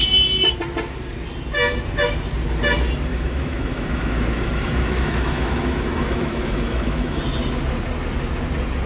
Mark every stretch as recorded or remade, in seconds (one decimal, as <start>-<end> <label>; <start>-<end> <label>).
0.0-3.1 recorded; 3.1-7.2 remade; 7.2-8.9 recorded